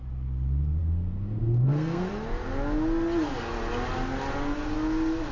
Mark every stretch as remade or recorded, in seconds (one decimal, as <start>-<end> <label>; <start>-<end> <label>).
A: 0.0-0.8 recorded; 0.8-2.1 remade; 2.1-5.3 recorded